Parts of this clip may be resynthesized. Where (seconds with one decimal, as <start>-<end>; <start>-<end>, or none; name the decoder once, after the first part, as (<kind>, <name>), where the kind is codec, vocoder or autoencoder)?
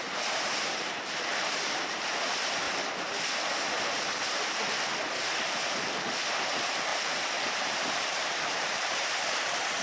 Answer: 0.0-2.6 (vocoder, BigVGAN v2); 7.5-9.8